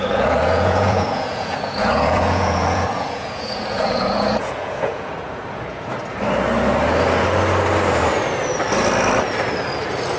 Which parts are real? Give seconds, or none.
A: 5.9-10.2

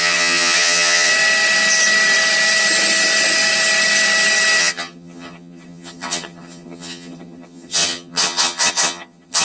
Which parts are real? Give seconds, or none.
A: 1.1-4.6

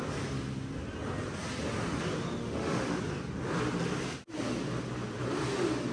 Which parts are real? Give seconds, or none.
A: 0.0-2.4; 3.0-5.9

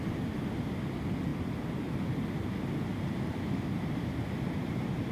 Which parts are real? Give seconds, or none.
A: 0.0-5.1

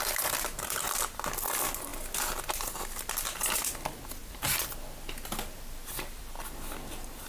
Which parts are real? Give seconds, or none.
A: 0.0-7.3

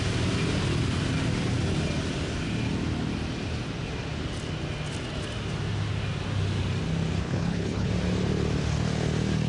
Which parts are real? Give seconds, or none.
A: 0.0-7.2; 7.9-9.5

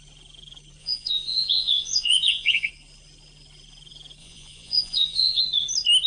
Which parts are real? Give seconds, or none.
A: 0.0-0.8; 2.7-4.2; 5.4-6.1

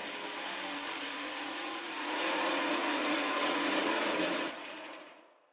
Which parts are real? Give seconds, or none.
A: 0.0-1.0